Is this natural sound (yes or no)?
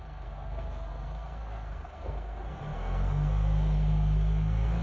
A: no